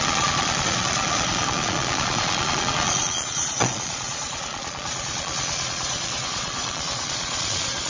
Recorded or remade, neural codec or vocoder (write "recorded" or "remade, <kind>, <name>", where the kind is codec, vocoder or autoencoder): remade, vocoder, Vocos